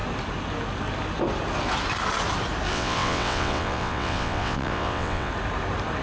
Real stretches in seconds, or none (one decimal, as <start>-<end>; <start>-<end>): 0.0-2.7; 5.3-6.0